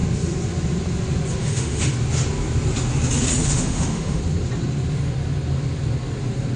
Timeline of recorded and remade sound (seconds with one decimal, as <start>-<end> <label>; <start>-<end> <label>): 0.0-1.4 recorded; 1.4-1.9 remade; 1.9-3.4 recorded; 3.4-4.2 remade; 4.2-6.6 recorded